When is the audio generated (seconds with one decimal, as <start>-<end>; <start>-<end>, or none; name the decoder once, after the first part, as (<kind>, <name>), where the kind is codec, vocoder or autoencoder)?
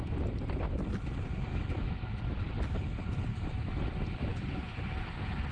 1.5-2.5 (autoencoder, DAC-VAE); 3.3-3.8; 4.3-4.8